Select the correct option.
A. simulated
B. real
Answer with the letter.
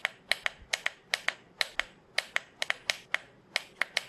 B